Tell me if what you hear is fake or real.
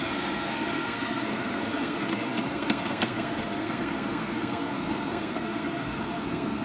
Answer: fake